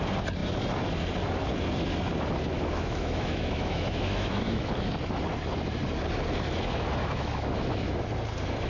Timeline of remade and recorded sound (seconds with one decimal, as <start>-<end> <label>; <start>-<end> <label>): 0.0-2.5 recorded; 2.5-4.7 remade; 4.7-7.0 recorded; 7.0-8.0 remade; 8.0-8.7 recorded